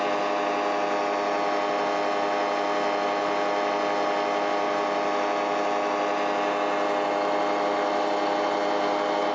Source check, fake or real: real